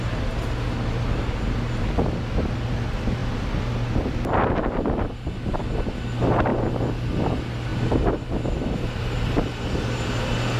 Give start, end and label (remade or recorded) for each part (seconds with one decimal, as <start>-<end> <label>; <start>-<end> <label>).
0.0-10.6 recorded